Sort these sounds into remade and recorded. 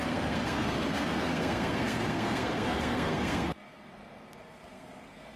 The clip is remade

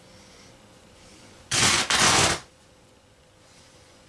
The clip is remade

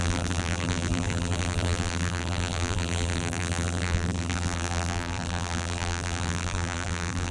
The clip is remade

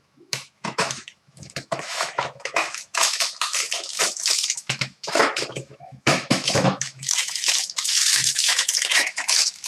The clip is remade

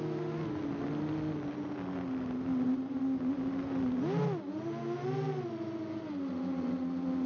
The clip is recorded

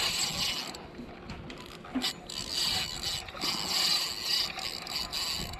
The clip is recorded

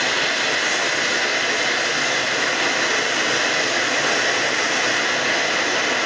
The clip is recorded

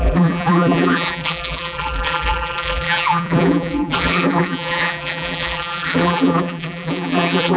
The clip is remade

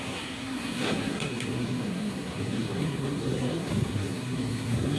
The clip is remade